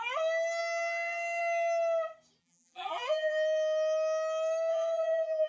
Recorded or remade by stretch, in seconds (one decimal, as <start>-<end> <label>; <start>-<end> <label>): 0.0-2.4 recorded; 2.4-3.3 remade; 3.3-4.7 recorded; 4.7-5.5 remade